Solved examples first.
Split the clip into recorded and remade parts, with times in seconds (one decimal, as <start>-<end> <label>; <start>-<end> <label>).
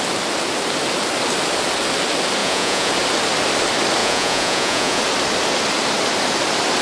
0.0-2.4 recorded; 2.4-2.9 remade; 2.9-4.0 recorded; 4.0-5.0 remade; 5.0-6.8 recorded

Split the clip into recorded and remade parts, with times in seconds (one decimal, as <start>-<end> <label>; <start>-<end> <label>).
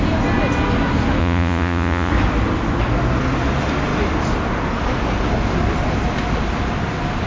0.0-1.2 recorded; 1.2-2.1 remade; 2.1-7.3 recorded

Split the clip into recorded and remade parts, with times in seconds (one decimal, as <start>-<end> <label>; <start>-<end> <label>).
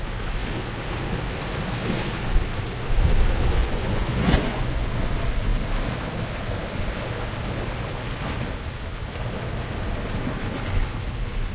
0.0-3.6 recorded; 3.6-4.9 remade; 4.9-11.5 recorded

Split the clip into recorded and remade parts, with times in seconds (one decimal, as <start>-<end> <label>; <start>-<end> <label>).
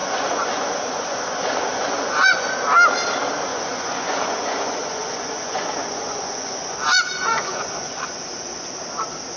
0.0-2.5 remade; 2.5-3.5 recorded; 3.5-8.7 remade; 8.7-9.4 recorded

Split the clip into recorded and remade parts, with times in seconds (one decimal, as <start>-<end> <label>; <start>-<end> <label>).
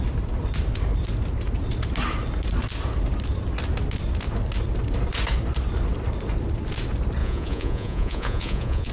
0.0-7.2 recorded; 7.2-8.9 remade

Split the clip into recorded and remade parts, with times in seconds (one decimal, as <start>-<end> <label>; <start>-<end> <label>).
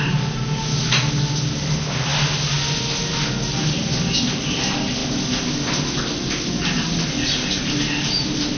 0.0-8.6 recorded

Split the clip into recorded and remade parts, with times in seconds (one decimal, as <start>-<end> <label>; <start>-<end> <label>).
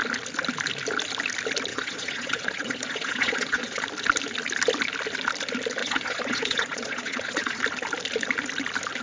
0.0-1.7 recorded; 1.7-3.8 remade; 3.8-5.8 recorded; 5.8-7.6 remade; 7.6-9.0 recorded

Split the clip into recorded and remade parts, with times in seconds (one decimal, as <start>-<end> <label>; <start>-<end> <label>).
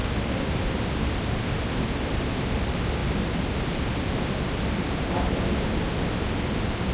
0.0-6.9 recorded